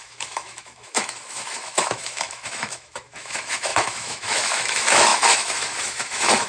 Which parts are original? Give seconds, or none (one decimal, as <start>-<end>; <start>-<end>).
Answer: none